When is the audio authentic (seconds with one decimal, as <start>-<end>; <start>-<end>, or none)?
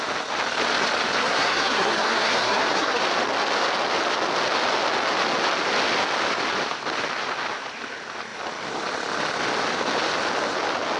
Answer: 0.0-1.2; 3.0-11.0